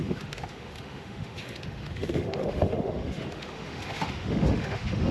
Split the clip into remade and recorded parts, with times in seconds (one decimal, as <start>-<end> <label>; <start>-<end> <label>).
0.0-5.1 remade